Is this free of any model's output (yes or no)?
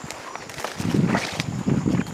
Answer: yes